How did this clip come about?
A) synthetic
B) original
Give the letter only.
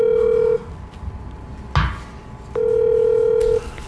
B